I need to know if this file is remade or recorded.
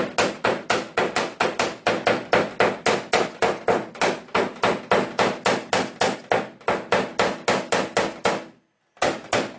recorded